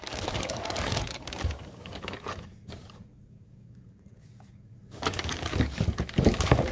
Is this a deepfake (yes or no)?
yes